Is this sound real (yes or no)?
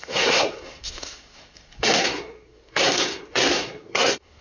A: no